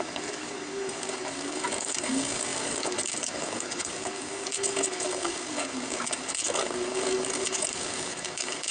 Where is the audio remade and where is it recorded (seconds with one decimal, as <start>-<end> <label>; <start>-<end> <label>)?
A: 0.0-8.7 remade